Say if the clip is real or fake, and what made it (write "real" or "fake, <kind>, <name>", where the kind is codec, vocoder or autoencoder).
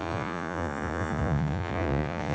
fake, vocoder, Vocos